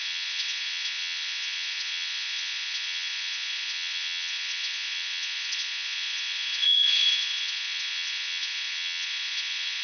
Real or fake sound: fake